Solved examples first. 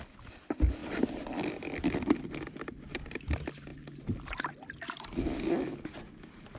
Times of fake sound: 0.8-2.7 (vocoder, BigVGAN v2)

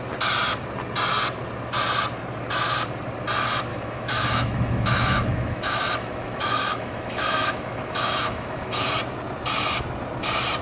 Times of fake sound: 3.7-8.9 (autoencoder, DAC-VAE)

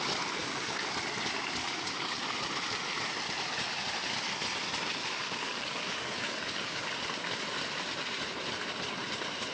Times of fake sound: 0.4-0.9 (codec, DAC); 1.6-2.2; 5.0-6.9

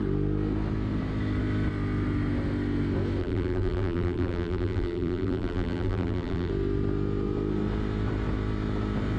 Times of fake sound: 3.2-6.5 (vocoder, BigVGAN v2)

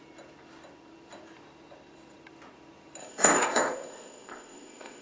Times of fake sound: 3.0-5.0 (codec, ZipCodec)

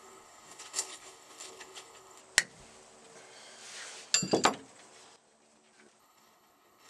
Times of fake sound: 0.0-2.2 (codec, HILCodec); 6.0-6.9

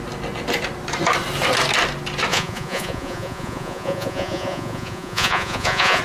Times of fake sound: 2.3-6.0 (vocoder, Vocos)